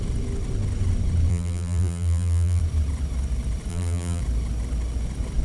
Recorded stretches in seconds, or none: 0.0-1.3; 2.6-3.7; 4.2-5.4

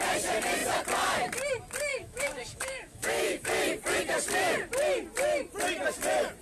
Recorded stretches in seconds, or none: 0.0-1.9; 3.5-6.4

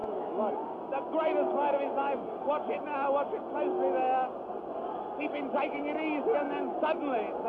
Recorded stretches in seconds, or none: 0.5-7.5

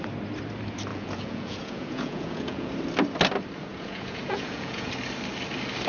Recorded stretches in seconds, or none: 0.0-0.9; 2.7-3.7; 4.9-5.9

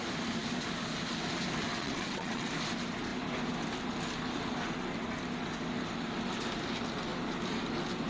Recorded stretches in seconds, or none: 0.0-1.7; 2.5-8.1

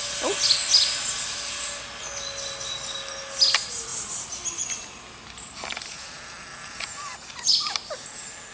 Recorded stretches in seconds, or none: 0.0-8.5